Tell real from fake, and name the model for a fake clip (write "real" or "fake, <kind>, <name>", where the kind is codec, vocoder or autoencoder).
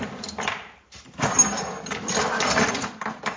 fake, vocoder, BigVGAN v2